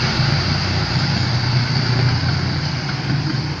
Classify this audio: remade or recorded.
recorded